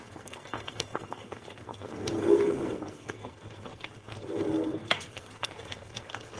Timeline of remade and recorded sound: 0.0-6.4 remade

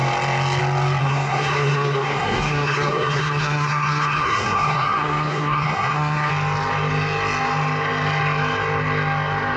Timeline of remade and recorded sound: 0.0-1.0 recorded; 1.0-6.3 remade; 6.3-9.6 recorded

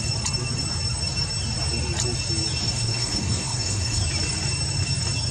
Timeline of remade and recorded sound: 0.0-2.6 recorded; 2.6-4.0 remade; 4.0-5.3 recorded

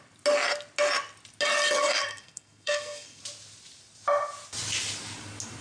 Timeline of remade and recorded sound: 0.0-1.8 recorded; 1.8-3.2 remade; 3.2-5.6 recorded

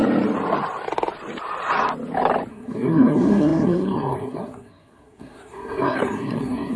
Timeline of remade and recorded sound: 0.0-2.5 recorded; 2.5-6.8 remade